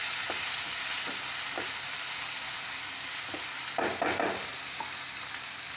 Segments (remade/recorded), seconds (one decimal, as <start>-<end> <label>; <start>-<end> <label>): 0.0-5.8 recorded